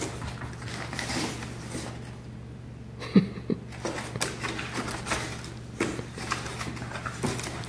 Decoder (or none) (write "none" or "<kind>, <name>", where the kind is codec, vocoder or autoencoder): none